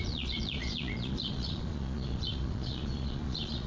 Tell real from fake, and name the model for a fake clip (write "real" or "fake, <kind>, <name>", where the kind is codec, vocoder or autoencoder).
fake, vocoder, Vocos